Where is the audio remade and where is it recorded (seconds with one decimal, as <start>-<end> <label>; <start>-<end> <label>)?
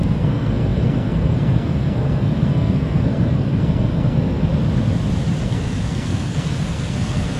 0.0-4.5 remade; 4.5-5.4 recorded; 5.4-7.4 remade